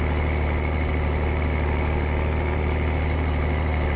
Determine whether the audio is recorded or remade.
recorded